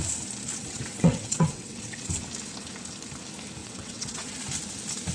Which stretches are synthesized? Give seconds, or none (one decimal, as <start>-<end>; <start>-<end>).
0.5-2.2; 3.6-4.4